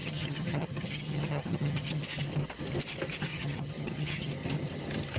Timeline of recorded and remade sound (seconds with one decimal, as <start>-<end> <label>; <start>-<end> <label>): 0.0-2.0 remade; 2.0-3.3 recorded; 3.3-4.3 remade; 4.3-5.2 recorded